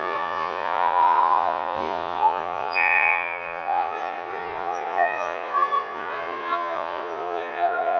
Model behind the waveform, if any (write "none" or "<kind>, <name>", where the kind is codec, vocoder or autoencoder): vocoder, Vocos